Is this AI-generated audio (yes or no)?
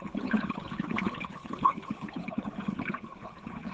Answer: yes